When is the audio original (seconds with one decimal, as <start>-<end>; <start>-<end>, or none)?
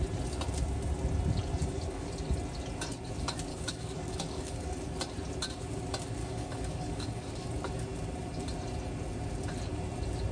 0.0-1.6; 2.1-3.5; 4.8-6.2; 7.5-10.3